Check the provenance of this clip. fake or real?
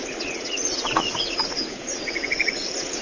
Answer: fake